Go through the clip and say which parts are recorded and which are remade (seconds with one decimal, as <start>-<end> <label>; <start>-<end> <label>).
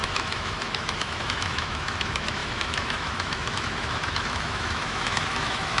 0.0-5.8 remade